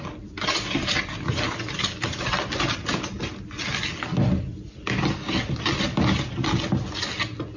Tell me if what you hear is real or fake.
real